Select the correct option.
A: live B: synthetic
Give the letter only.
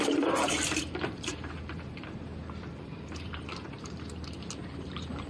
B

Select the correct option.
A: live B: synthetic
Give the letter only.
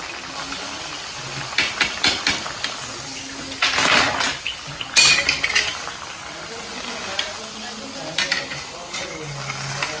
A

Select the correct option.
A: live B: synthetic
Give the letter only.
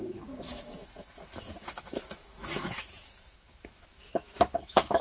B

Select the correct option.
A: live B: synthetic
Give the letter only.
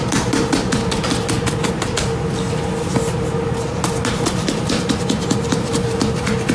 A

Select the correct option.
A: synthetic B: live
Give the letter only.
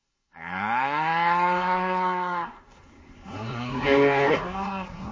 A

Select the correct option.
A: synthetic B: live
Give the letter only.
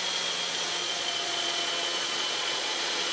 A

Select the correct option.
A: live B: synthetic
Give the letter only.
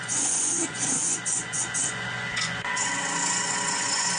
B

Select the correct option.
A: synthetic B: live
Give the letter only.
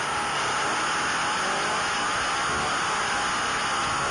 B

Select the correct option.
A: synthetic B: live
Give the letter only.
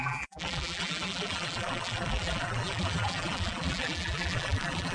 A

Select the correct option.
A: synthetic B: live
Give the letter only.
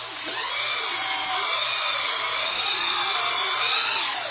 B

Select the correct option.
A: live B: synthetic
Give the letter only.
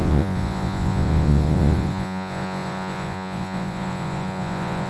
B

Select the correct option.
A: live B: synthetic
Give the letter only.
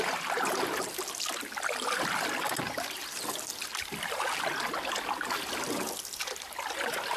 A